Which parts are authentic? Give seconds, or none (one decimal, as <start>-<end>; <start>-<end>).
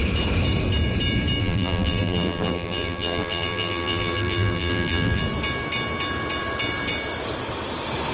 0.0-1.4; 5.2-8.1